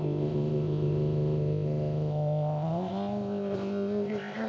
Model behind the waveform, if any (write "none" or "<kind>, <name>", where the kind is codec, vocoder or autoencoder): codec, ZipCodec